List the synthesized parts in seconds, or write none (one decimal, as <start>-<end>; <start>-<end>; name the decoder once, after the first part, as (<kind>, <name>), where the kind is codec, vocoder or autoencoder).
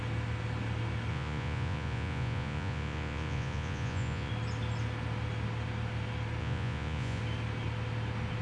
1.1-4.3 (vocoder, Vocos); 6.4-7.2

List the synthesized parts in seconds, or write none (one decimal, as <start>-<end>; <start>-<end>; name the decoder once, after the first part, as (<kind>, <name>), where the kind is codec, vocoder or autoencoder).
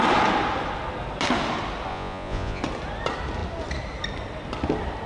1.9-2.6 (vocoder, Vocos)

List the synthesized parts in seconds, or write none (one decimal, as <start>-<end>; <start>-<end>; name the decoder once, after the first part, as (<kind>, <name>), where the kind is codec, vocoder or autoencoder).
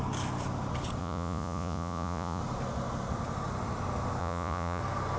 1.0-2.4 (vocoder, Vocos); 4.2-4.8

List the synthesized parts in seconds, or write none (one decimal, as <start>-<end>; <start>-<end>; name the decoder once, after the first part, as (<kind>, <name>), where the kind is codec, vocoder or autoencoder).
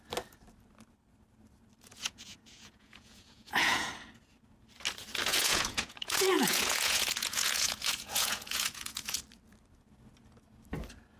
1.9-3.9 (vocoder, Vocos); 5.3-9.2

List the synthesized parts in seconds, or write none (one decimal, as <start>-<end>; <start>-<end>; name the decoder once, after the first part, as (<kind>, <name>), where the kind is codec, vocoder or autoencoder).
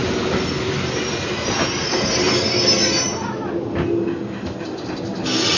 none